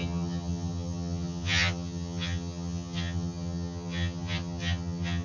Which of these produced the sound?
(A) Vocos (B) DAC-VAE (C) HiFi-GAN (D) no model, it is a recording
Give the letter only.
C